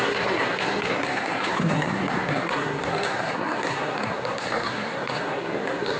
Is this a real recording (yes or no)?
no